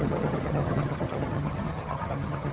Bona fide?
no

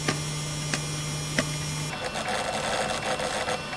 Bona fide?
yes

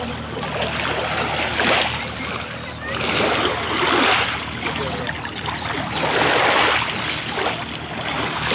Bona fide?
yes